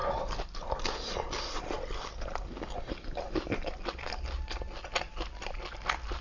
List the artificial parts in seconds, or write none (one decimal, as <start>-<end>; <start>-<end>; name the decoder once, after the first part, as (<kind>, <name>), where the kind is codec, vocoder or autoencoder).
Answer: none